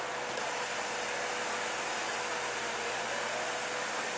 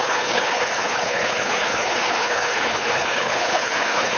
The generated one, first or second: second